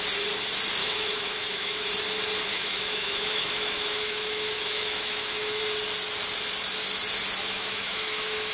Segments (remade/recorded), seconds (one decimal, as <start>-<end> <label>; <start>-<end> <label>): 0.0-0.8 recorded; 0.8-1.9 remade; 1.9-2.5 recorded; 2.5-5.6 remade; 5.6-7.4 recorded; 7.4-8.5 remade